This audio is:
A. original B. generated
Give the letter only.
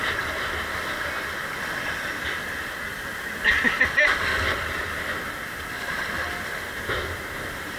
A